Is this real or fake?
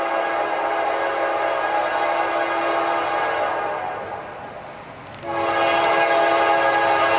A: real